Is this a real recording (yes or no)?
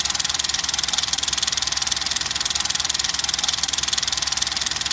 yes